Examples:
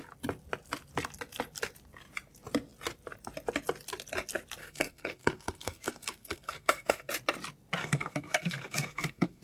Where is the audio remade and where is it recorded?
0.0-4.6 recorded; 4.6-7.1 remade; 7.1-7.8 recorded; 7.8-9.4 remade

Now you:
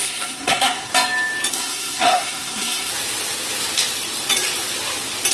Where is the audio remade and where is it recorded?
0.0-0.9 remade; 0.9-1.5 recorded; 1.5-2.9 remade; 2.9-5.3 recorded

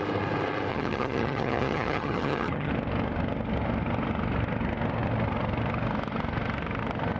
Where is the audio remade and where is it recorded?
0.0-0.7 recorded; 0.7-2.7 remade; 2.7-7.2 recorded

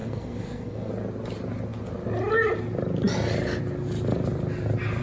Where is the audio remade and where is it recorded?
0.0-0.9 remade; 0.9-5.0 recorded

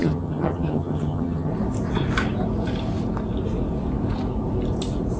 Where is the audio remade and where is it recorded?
0.0-1.5 remade; 1.5-5.2 recorded

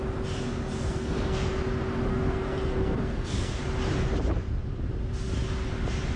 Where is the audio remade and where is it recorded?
0.0-0.9 recorded; 0.9-1.5 remade; 1.5-2.1 recorded; 2.1-3.6 remade; 3.6-6.2 recorded

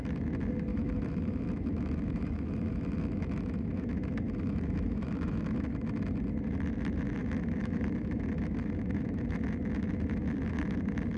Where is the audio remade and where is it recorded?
0.0-0.7 recorded; 0.7-5.8 remade; 5.8-7.2 recorded; 7.2-9.4 remade; 9.4-11.2 recorded